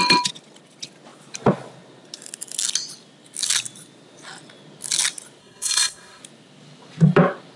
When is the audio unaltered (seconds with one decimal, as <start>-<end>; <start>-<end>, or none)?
0.0-5.4; 6.2-7.6